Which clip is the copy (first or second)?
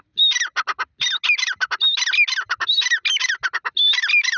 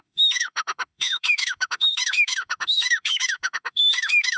second